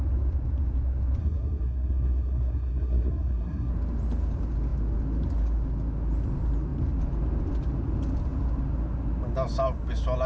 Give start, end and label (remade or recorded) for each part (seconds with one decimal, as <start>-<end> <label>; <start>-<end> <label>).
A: 0.0-1.2 recorded; 1.2-3.7 remade; 3.7-10.3 recorded